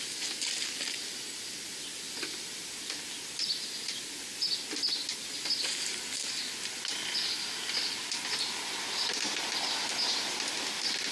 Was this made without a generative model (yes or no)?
yes